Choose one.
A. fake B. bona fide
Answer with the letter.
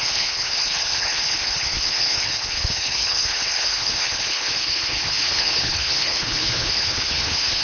A